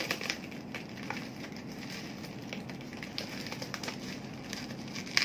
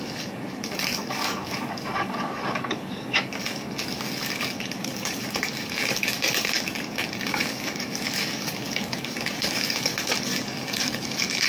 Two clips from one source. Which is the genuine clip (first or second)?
first